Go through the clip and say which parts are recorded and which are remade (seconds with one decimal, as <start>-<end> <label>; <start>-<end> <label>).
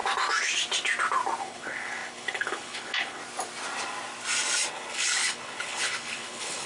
0.0-1.4 recorded; 1.4-3.2 remade; 3.2-4.7 recorded; 4.7-6.7 remade